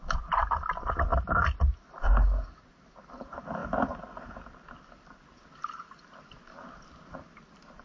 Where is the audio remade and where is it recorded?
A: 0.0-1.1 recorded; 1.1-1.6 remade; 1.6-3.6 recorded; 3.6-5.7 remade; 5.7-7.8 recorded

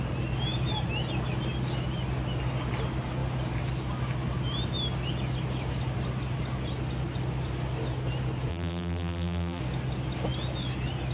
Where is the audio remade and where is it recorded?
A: 0.0-8.5 recorded; 8.5-9.6 remade; 9.6-11.1 recorded

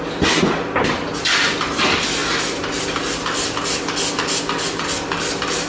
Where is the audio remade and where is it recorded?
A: 0.0-5.7 recorded

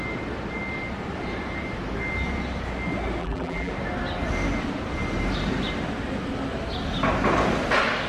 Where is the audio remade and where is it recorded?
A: 0.0-3.2 recorded; 3.2-3.7 remade; 3.7-8.1 recorded

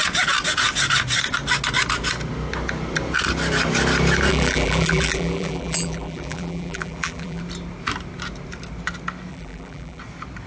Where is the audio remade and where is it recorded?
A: 0.0-4.3 recorded; 4.3-7.4 remade; 7.4-9.3 recorded; 9.3-10.0 remade; 10.0-10.5 recorded

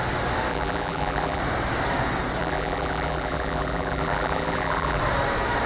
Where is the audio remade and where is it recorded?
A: 0.0-0.5 recorded; 0.5-1.4 remade; 1.4-2.4 recorded; 2.4-5.0 remade; 5.0-5.7 recorded

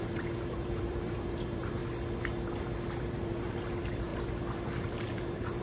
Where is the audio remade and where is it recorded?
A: 0.0-1.8 remade; 1.8-3.0 recorded; 3.0-5.6 remade

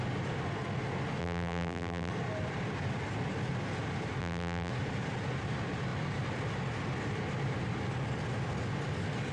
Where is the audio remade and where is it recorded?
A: 0.0-1.2 recorded; 1.2-2.1 remade; 2.1-4.2 recorded; 4.2-4.7 remade; 4.7-9.3 recorded